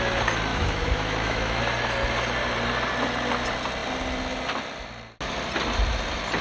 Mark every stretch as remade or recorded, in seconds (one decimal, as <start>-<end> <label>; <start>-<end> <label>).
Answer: 0.0-0.5 recorded; 0.5-1.6 remade; 1.6-6.4 recorded